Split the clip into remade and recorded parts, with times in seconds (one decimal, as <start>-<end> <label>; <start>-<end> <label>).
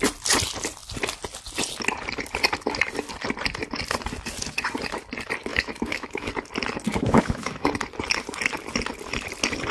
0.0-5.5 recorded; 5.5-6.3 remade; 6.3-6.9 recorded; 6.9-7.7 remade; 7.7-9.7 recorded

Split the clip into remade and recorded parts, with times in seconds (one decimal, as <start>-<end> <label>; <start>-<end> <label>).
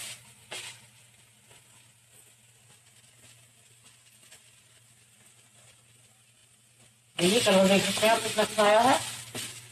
0.0-9.7 recorded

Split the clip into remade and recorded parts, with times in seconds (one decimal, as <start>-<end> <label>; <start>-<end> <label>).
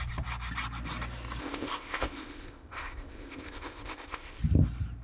0.0-1.4 recorded; 1.4-4.4 remade; 4.4-5.0 recorded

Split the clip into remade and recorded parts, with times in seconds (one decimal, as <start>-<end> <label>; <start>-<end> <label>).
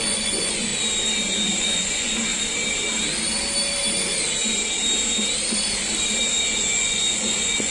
0.0-0.7 remade; 0.7-1.6 recorded; 1.6-2.3 remade; 2.3-6.4 recorded; 6.4-7.7 remade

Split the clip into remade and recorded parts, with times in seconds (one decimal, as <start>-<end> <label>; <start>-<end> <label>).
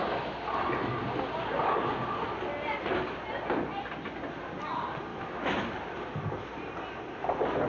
0.0-5.1 recorded; 5.1-5.7 remade; 5.7-7.7 recorded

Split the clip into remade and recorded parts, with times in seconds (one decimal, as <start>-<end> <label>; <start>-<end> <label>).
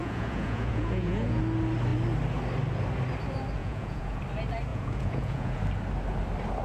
0.0-1.4 remade; 1.4-3.6 recorded; 3.6-4.2 remade; 4.2-4.7 recorded; 4.7-5.6 remade; 5.6-6.6 recorded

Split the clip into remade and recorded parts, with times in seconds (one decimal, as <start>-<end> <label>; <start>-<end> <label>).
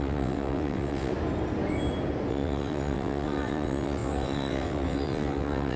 0.0-1.1 remade; 1.1-2.3 recorded; 2.3-5.8 remade